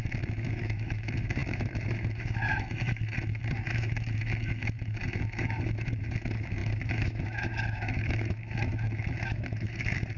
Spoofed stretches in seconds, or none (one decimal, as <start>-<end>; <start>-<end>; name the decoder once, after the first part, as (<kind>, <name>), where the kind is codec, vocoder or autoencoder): 0.0-10.2 (autoencoder, DAC-VAE)